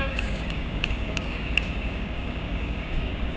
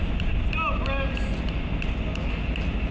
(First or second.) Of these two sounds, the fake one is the first